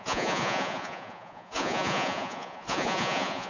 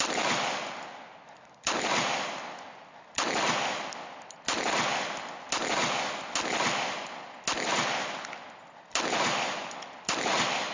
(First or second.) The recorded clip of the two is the second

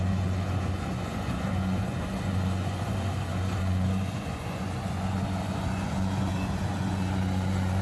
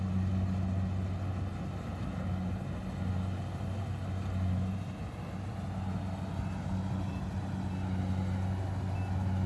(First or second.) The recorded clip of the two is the second